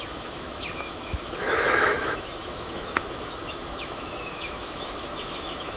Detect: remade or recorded remade